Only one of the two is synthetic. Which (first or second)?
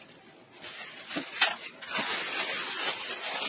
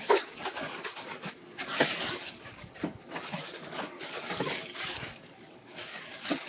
second